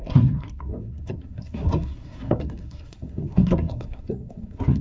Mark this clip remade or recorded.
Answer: remade